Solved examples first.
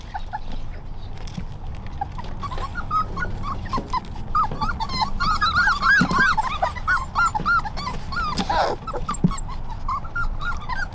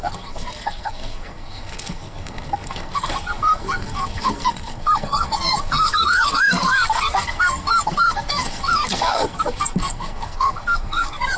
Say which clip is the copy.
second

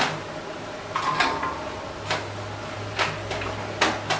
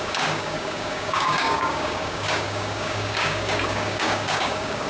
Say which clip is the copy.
second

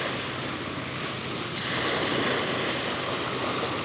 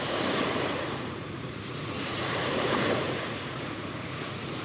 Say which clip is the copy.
second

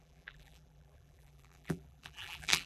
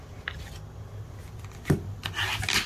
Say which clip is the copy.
first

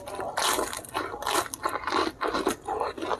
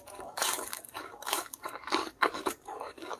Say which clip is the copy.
second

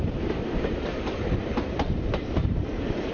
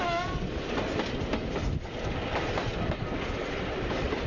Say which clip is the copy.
first